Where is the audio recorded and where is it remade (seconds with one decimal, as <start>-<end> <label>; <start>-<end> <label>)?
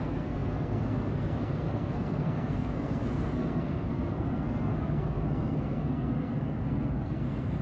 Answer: 0.0-7.6 remade